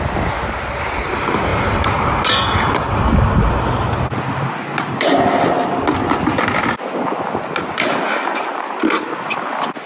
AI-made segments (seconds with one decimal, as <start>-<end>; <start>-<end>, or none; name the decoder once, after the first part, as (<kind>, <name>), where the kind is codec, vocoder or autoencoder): none